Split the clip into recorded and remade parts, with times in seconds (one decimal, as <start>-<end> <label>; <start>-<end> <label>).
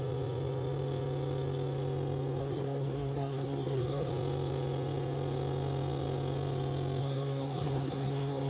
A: 0.0-2.4 recorded; 2.4-4.1 remade; 4.1-7.0 recorded; 7.0-8.5 remade